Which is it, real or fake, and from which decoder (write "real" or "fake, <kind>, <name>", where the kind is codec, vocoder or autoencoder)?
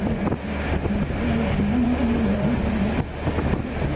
real